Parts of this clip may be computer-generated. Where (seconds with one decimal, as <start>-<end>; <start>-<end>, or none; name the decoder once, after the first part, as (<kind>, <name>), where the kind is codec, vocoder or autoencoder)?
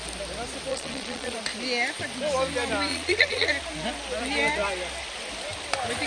0.7-1.4 (vocoder, Vocos); 2.9-3.5